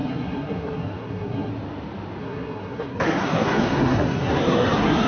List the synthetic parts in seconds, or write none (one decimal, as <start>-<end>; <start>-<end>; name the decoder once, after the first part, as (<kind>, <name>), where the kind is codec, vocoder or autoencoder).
0.0-1.5 (codec, SNAC); 2.2-5.1